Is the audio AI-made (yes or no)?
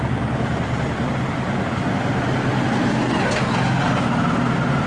no